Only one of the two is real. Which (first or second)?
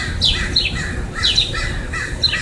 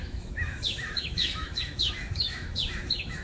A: first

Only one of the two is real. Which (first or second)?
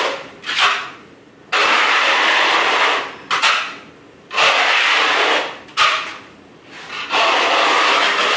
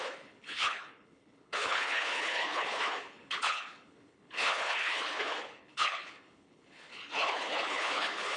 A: first